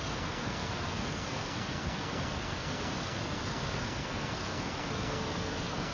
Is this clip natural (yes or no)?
no